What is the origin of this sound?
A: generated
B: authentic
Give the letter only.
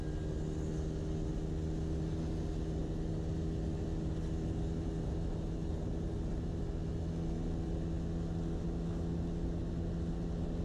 B